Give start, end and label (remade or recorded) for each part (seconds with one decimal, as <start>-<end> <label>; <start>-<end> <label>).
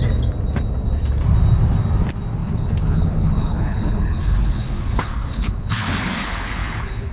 0.0-2.4 recorded; 2.4-7.1 remade